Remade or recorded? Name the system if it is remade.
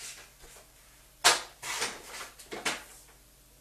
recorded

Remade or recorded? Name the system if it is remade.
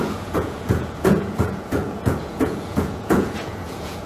remade, vocoder, Vocos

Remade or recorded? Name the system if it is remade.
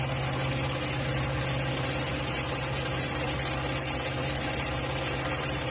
recorded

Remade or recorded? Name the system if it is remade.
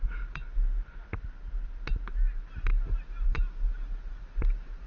recorded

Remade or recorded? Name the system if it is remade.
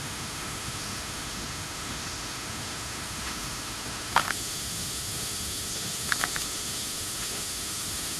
remade, autoencoder, DAC-VAE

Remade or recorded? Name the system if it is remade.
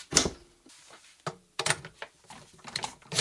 recorded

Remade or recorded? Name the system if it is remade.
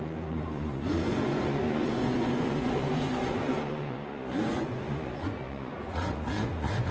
remade, vocoder, Vocos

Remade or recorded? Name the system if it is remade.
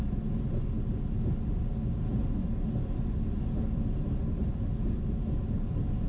recorded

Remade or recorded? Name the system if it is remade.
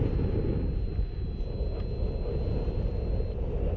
recorded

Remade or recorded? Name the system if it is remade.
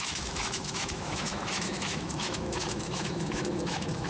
remade, autoencoder, DAC-VAE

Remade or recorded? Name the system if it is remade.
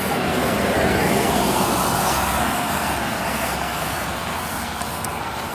remade, codec, SNAC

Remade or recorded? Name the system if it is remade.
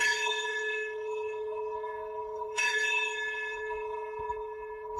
remade, codec, HILCodec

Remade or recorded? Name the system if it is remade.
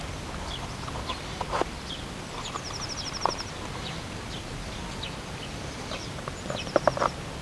recorded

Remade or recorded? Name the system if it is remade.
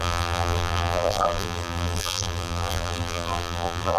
remade, vocoder, BigVGAN v2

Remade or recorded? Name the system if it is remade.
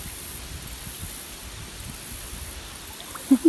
recorded